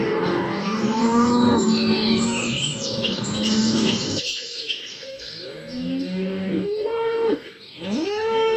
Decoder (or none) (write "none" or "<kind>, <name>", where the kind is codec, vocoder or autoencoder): codec, DAC